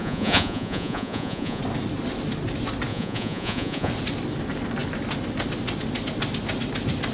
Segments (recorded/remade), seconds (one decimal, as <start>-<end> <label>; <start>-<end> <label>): 0.0-1.6 remade; 1.6-2.9 recorded; 2.9-3.9 remade; 3.9-7.1 recorded